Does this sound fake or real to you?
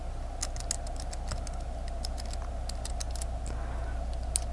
real